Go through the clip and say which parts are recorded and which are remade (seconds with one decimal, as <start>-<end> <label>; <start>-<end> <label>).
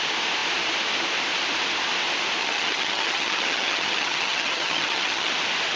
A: 0.0-2.4 recorded; 2.4-5.3 remade; 5.3-5.8 recorded